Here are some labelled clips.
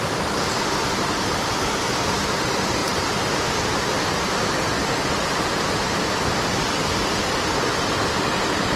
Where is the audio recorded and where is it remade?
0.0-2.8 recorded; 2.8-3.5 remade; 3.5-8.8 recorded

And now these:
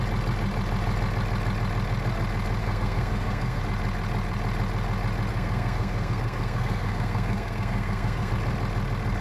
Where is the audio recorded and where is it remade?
0.0-2.6 recorded; 2.6-3.6 remade; 3.6-5.3 recorded; 5.3-8.3 remade; 8.3-9.2 recorded